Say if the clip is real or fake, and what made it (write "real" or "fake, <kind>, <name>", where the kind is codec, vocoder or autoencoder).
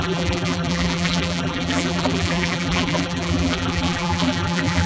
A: fake, vocoder, BigVGAN v2